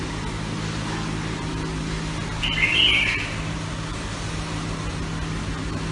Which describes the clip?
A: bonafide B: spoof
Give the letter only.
A